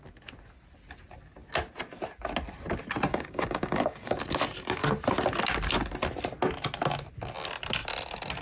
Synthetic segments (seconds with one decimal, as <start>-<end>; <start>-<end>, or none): 3.1-4.2

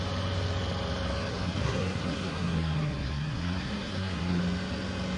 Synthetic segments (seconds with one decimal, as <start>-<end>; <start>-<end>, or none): 1.3-4.4

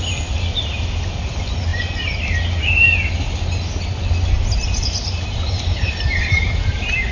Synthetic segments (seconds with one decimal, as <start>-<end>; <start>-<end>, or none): 4.6-7.1

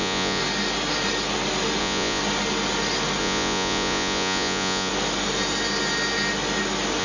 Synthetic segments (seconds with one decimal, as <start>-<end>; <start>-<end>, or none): 0.0-0.4; 1.8-2.2; 3.2-4.9

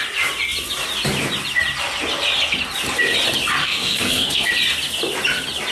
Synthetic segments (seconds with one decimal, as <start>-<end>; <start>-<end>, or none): 3.6-4.5

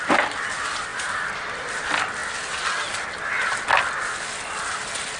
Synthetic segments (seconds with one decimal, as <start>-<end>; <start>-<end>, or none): none